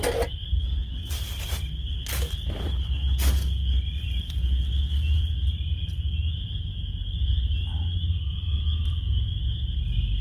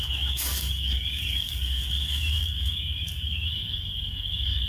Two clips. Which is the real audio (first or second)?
first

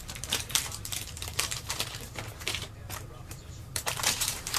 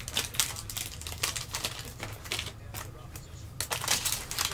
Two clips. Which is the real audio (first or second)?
second